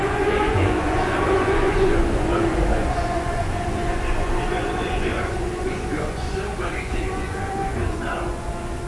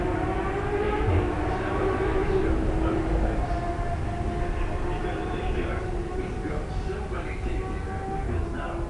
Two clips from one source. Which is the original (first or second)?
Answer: second